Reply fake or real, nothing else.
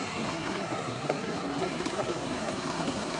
fake